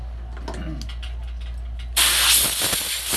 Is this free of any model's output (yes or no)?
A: yes